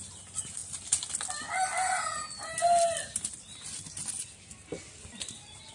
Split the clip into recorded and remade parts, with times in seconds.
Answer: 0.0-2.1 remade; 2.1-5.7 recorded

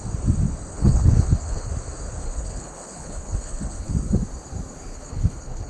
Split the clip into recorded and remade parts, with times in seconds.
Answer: 0.0-0.7 recorded; 0.7-1.7 remade; 1.7-2.2 recorded; 2.2-3.9 remade; 3.9-4.9 recorded; 4.9-5.7 remade

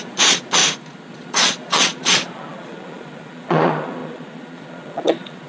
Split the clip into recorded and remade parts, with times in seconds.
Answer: 0.0-0.6 remade; 0.6-1.1 recorded; 1.1-5.5 remade

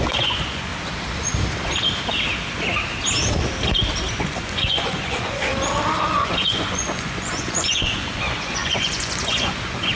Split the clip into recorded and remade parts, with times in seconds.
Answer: 0.0-0.7 remade; 0.7-4.1 recorded; 4.1-5.5 remade; 5.5-6.0 recorded; 6.0-10.0 remade

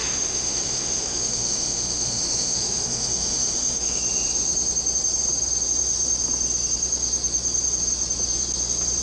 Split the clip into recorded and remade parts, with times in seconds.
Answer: 0.0-4.0 remade; 4.0-9.0 recorded

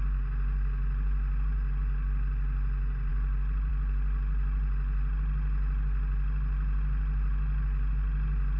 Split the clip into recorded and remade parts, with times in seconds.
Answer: 0.0-8.6 recorded

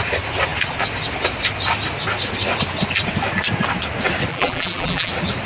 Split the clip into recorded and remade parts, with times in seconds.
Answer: 0.0-4.3 recorded; 4.3-5.1 remade; 5.1-5.5 recorded